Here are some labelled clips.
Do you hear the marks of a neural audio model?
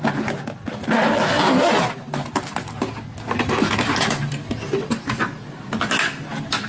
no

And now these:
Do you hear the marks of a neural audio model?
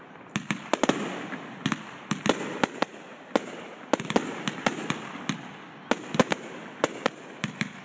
no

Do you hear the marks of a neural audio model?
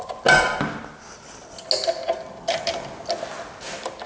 no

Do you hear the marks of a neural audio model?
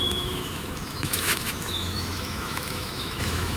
yes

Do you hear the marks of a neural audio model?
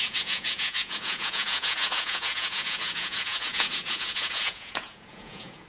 yes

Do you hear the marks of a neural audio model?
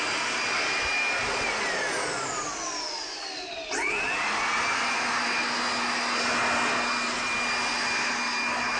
no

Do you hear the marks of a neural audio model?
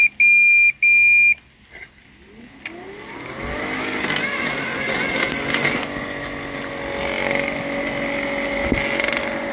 no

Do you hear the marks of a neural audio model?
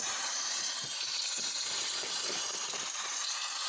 yes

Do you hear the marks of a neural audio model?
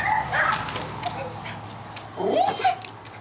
no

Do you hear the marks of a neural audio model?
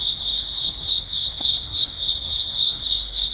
yes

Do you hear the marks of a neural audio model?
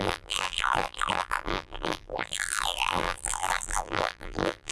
yes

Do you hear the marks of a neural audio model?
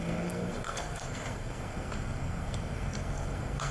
yes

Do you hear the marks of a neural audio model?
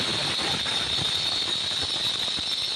no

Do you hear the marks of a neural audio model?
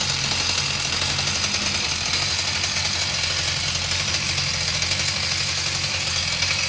no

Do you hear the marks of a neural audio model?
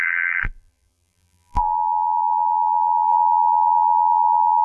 yes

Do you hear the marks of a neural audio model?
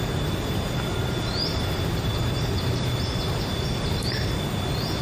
yes